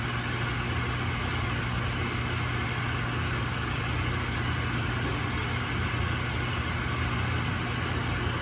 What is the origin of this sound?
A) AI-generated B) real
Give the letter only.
B